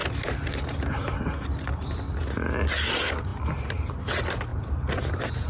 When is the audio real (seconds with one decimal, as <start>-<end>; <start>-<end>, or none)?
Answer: 0.0-5.5